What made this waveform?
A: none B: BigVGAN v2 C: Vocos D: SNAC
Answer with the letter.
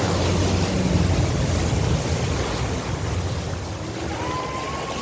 A